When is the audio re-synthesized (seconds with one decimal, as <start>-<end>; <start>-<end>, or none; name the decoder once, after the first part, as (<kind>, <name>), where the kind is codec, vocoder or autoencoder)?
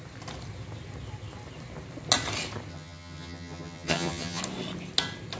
2.7-4.4 (vocoder, HiFi-GAN)